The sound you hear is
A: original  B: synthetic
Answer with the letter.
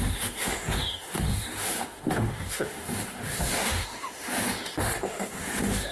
B